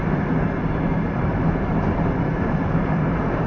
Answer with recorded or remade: remade